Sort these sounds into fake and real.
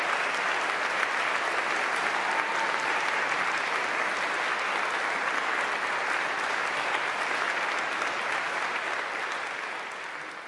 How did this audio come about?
real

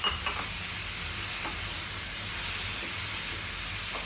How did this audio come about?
real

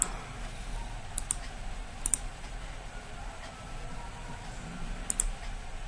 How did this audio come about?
real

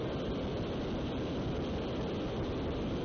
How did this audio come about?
real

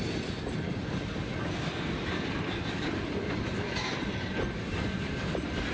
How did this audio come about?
fake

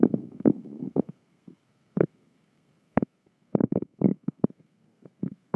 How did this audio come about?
fake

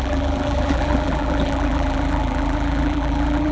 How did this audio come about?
fake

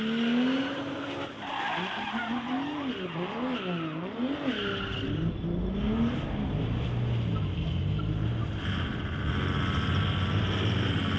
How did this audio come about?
real